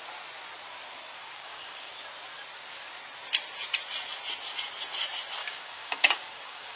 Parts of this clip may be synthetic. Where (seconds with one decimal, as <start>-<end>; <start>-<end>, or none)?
1.2-1.9; 5.4-6.8